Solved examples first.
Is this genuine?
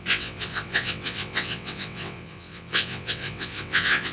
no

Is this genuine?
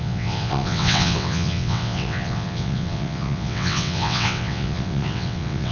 no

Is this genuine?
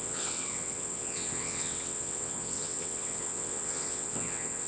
no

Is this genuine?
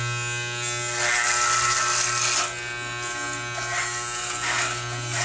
yes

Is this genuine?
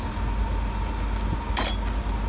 yes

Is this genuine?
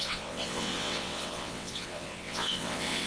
no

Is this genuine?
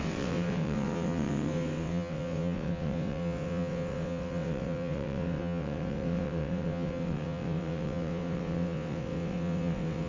no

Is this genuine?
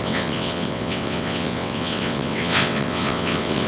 no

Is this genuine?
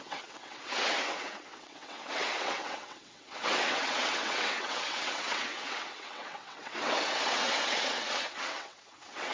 no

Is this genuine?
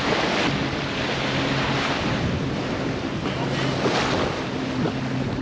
yes